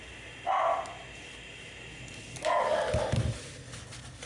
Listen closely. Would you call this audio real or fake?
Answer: real